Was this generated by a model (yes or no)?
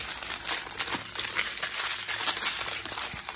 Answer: no